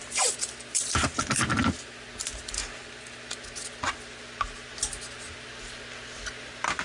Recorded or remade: recorded